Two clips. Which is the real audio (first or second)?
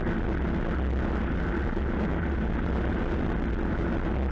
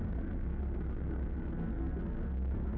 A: first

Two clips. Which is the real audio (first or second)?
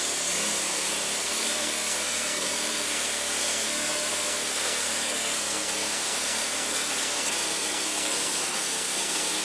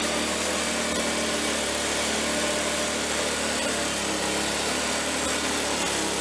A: second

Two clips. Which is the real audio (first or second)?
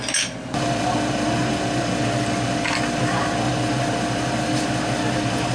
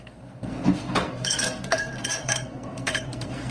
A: first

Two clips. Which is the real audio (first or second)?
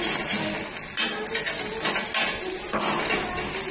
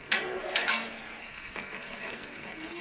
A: first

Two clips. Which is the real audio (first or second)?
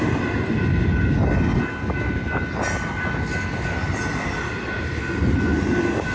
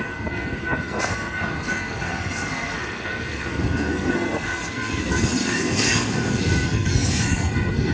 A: first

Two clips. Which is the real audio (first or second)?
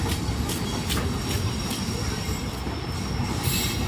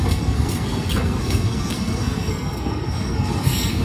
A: first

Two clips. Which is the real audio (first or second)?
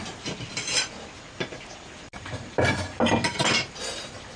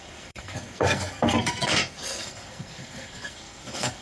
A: first